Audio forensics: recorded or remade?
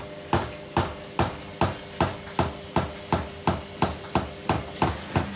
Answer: recorded